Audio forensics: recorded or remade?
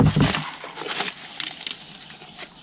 recorded